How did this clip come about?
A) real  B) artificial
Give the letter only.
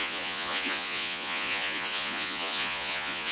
B